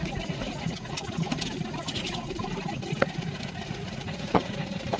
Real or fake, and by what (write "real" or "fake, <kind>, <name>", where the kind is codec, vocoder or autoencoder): fake, vocoder, Vocos